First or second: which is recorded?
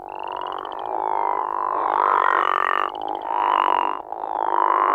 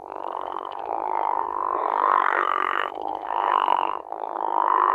first